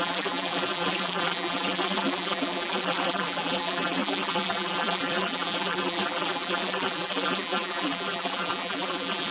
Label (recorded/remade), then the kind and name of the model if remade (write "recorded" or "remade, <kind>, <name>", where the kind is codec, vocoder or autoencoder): remade, vocoder, BigVGAN v2